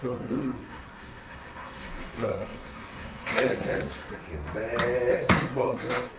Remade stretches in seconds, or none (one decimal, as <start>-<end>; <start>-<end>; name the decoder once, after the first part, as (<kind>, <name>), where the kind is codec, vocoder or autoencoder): 0.0-4.3 (codec, SNAC); 5.1-6.2